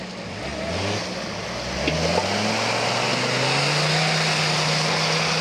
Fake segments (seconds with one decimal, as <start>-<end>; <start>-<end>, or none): none